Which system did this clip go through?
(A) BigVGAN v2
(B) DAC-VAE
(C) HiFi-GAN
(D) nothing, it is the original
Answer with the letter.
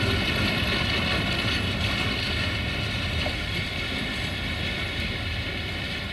D